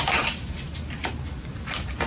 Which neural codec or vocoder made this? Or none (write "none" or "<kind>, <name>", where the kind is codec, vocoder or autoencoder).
none